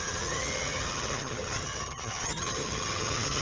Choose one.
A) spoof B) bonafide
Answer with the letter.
A